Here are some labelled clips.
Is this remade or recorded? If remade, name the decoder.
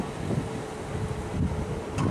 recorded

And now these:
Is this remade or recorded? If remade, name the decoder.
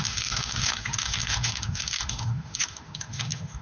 remade, autoencoder, DAC-VAE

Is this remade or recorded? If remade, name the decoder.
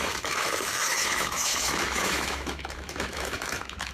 remade, autoencoder, DAC-VAE